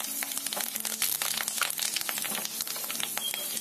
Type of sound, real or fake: real